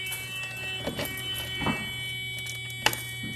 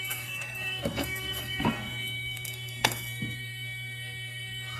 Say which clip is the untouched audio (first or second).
first